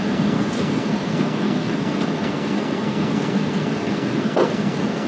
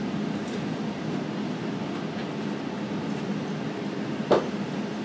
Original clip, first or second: second